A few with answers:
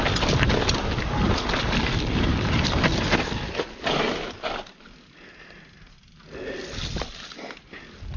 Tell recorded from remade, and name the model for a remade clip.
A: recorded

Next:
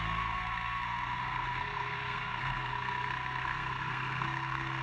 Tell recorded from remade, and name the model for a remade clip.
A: remade, codec, SNAC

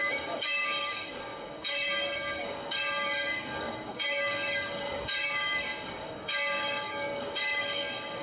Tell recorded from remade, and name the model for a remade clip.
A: remade, codec, DAC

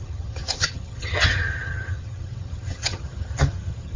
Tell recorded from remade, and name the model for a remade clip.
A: remade, vocoder, HiFi-GAN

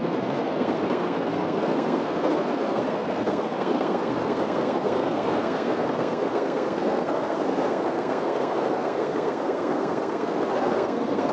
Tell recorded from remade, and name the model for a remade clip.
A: remade, codec, SNAC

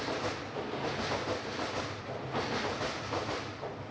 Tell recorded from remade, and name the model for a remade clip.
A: remade, vocoder, BigVGAN v2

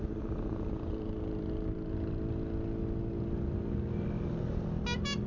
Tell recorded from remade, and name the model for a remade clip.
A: recorded